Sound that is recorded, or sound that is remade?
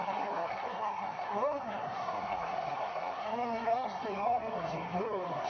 remade